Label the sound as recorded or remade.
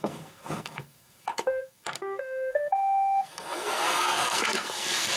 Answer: remade